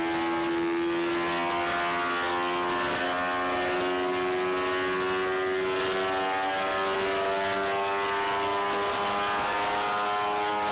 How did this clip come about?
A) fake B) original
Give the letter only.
B